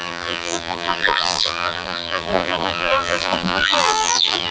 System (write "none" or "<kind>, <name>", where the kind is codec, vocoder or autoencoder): vocoder, BigVGAN v2